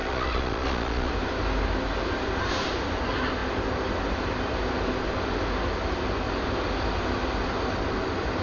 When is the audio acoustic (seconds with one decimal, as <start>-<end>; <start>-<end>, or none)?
1.1-8.4